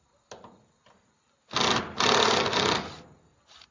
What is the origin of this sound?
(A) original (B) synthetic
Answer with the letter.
A